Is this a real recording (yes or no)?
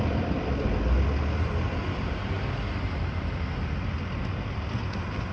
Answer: yes